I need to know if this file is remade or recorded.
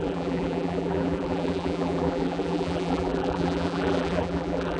remade